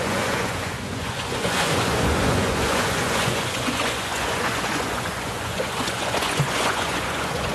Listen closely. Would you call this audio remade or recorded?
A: remade